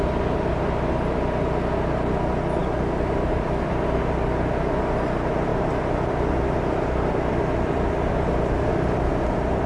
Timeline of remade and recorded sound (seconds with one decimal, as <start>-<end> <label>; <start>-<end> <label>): 0.0-2.6 recorded; 2.6-4.0 remade; 4.0-5.5 recorded; 5.5-8.4 remade; 8.4-9.7 recorded